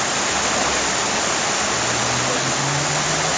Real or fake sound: real